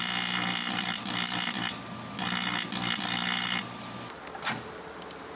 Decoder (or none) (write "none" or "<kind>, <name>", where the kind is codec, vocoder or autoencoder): none